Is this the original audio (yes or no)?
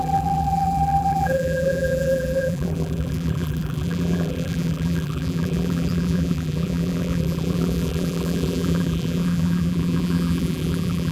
no